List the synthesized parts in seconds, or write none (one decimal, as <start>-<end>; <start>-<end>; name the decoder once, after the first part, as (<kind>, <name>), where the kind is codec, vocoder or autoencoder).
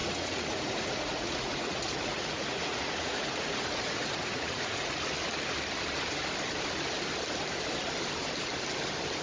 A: 0.0-4.9 (vocoder, Vocos)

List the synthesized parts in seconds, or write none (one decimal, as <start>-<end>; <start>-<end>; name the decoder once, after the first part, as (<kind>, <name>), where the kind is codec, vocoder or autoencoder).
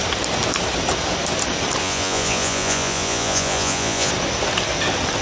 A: 1.8-4.1 (vocoder, Vocos)